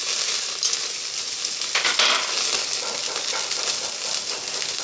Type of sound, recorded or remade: recorded